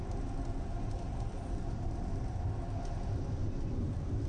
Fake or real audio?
real